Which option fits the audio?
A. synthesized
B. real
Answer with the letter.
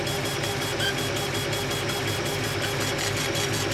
B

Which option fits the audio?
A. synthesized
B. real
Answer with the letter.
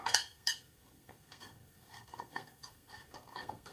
A